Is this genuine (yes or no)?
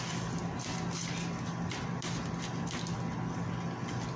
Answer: yes